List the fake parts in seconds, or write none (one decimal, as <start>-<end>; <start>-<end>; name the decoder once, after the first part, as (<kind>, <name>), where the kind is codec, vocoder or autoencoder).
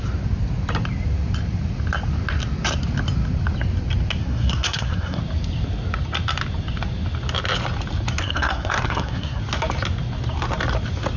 4.2-5.2 (codec, SNAC); 8.2-9.4